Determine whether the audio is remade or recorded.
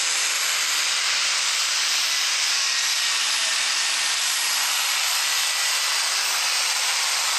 recorded